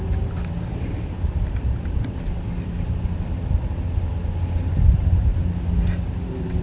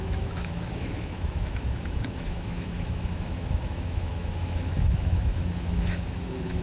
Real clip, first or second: first